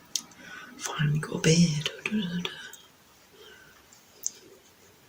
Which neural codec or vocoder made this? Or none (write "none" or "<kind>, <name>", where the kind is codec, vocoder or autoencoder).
none